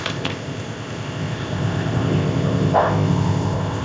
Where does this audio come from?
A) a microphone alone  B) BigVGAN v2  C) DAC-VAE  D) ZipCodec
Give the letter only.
D